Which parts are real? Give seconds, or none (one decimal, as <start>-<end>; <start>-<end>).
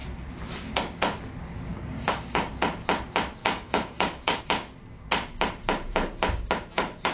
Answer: 0.0-1.7; 2.5-3.4; 4.4-7.1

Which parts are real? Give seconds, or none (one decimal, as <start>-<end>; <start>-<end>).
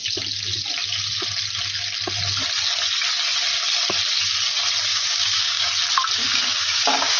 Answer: 0.0-4.9; 5.7-6.2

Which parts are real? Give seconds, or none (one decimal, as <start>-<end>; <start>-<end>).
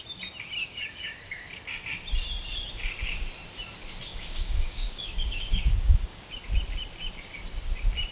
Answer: 0.0-0.6; 1.5-4.1; 6.3-8.1